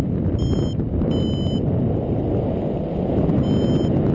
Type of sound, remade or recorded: recorded